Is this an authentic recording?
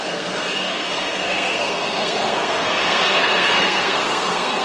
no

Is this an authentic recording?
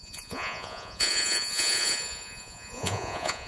no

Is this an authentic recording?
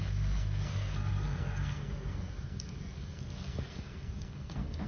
no